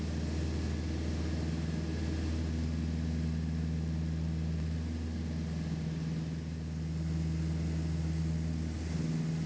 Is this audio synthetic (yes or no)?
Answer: no